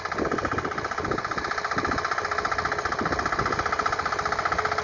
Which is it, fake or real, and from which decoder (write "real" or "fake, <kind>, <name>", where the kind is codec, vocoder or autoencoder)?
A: real